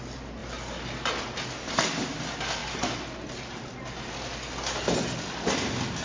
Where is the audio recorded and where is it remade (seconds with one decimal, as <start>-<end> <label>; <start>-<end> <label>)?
0.0-6.0 recorded